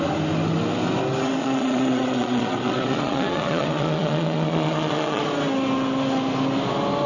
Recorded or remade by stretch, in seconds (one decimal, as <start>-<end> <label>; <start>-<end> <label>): 0.0-1.4 recorded; 1.4-5.2 remade; 5.2-7.1 recorded